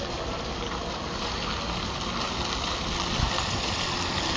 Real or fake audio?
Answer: real